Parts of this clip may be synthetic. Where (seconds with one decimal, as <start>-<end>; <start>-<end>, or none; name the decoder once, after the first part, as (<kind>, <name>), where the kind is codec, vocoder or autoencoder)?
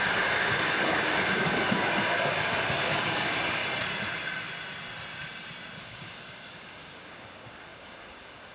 0.0-3.6 (codec, DAC); 5.8-8.5